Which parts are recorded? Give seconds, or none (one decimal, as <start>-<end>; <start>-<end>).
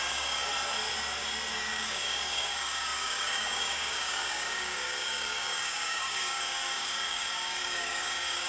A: 0.5-1.5